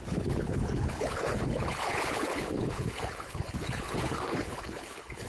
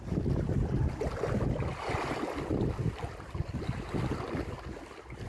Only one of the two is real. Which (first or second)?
second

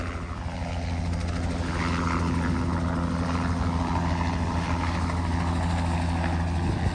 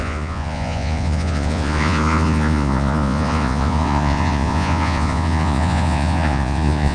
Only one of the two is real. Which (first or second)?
first